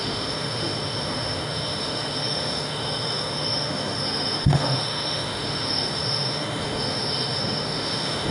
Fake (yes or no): yes